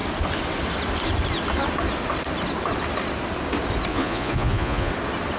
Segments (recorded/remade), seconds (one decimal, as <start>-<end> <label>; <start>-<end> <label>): 0.0-3.9 recorded; 3.9-4.9 remade; 4.9-5.4 recorded